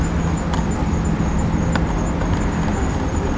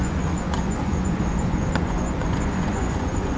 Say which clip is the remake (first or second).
second